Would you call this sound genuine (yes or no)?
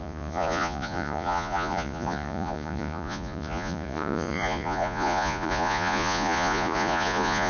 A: no